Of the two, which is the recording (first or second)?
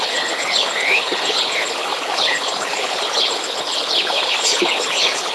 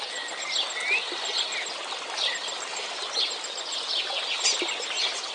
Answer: second